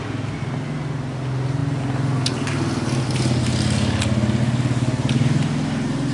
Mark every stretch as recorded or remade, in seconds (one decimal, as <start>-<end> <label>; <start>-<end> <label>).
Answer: 0.0-6.1 recorded